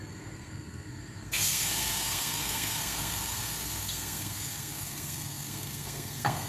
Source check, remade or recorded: remade